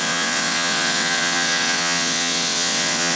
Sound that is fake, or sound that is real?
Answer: fake